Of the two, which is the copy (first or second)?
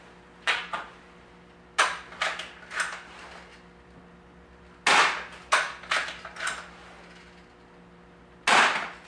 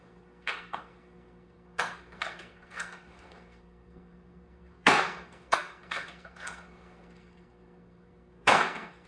second